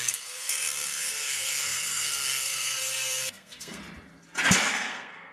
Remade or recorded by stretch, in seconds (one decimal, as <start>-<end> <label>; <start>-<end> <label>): 0.0-3.8 remade; 3.8-4.7 recorded; 4.7-5.3 remade